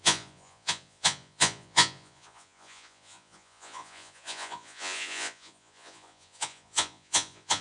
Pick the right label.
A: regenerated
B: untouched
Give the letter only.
A